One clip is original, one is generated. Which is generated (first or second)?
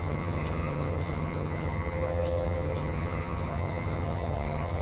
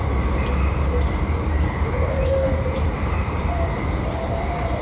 first